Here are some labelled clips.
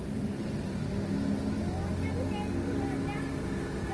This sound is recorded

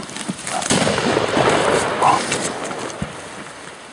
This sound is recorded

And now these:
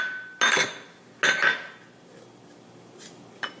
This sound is recorded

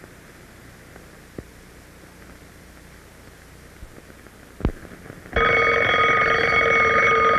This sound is recorded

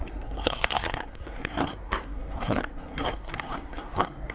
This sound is remade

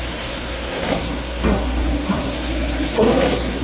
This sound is remade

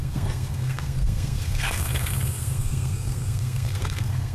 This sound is remade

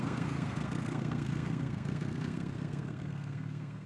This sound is remade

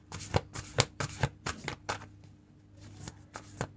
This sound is recorded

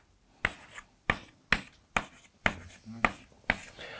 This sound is recorded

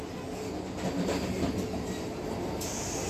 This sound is recorded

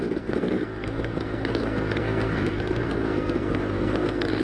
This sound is remade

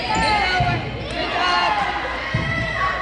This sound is recorded